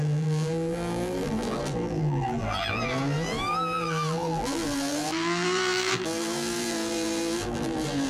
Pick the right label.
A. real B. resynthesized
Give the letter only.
B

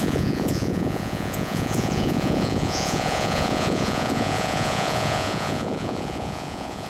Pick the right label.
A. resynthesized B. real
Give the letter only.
A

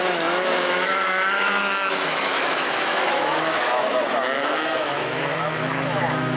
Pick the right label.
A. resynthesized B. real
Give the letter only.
A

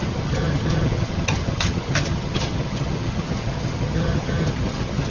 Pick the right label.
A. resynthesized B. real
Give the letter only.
A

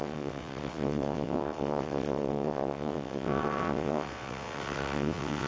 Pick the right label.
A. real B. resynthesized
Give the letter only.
B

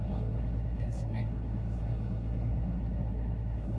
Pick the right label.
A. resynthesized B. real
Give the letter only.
A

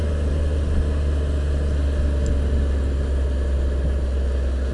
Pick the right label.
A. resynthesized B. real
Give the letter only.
B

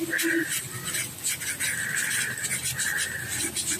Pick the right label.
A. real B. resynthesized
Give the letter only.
A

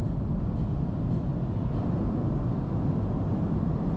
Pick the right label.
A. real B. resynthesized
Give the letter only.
A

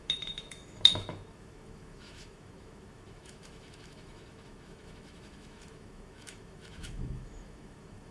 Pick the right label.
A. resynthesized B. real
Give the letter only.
A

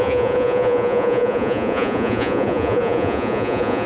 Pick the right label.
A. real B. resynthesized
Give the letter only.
B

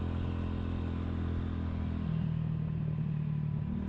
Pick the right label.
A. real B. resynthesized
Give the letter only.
A